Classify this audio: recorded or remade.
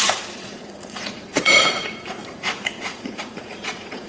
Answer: remade